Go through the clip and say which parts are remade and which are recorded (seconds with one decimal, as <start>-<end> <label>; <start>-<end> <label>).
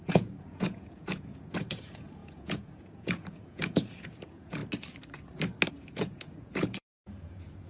0.0-4.6 remade; 4.6-5.7 recorded; 5.7-7.7 remade